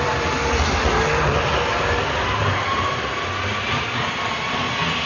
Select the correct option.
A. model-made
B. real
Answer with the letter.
B